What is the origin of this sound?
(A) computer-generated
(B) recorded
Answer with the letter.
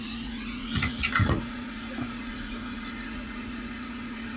A